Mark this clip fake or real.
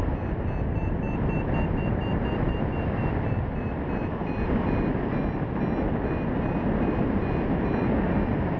real